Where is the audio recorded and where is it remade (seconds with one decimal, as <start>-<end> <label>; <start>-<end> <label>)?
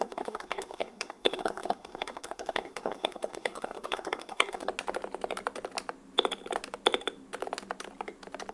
0.0-4.7 remade; 4.7-8.5 recorded